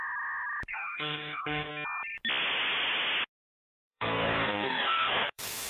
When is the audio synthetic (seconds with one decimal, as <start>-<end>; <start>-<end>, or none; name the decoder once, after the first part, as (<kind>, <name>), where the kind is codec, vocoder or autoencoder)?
0.7-1.7 (codec, DAC); 3.6-5.7